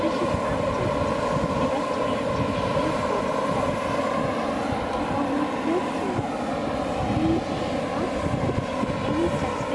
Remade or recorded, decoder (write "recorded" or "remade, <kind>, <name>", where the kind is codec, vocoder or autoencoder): recorded